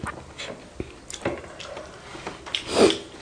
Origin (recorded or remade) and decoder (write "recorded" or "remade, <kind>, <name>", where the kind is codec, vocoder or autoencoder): recorded